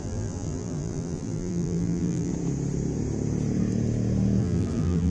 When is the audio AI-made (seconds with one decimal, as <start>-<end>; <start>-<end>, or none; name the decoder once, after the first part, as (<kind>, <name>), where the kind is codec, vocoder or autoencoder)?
0.0-2.3 (vocoder, BigVGAN v2); 4.4-5.1